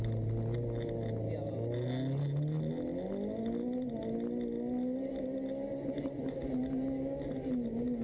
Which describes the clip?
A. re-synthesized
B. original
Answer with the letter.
B